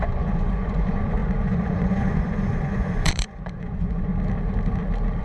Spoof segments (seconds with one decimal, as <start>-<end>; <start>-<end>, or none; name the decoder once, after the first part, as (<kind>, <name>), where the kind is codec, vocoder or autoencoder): 0.0-4.1 (vocoder, Vocos)